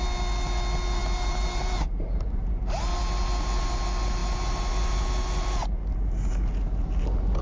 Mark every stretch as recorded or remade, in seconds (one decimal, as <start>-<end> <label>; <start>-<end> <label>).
0.0-1.0 recorded; 1.0-2.8 remade; 2.8-7.4 recorded